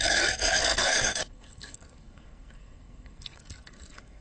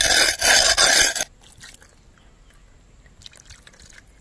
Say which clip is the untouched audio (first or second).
second